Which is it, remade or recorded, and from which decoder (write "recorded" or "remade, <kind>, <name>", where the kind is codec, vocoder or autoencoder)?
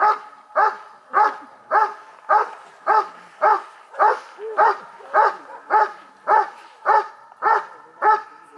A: recorded